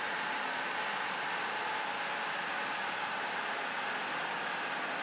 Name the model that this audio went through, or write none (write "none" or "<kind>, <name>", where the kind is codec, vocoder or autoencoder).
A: none